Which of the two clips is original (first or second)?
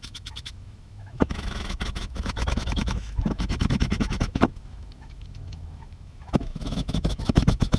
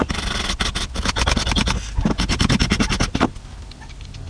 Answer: second